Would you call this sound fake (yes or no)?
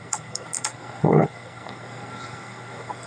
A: yes